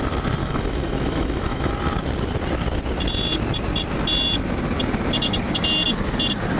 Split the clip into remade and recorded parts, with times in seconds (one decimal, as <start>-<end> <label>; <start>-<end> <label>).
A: 0.0-0.4 recorded; 0.4-1.7 remade; 1.7-6.6 recorded